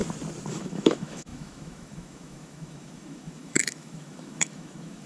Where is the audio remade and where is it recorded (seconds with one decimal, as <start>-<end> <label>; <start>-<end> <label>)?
0.0-0.5 recorded; 0.5-5.1 remade